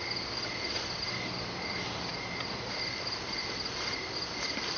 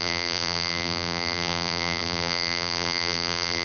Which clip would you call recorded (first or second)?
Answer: first